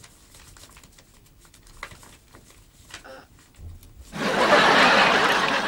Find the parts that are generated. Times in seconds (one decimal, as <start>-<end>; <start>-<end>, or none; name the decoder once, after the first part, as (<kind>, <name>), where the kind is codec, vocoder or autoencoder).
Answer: none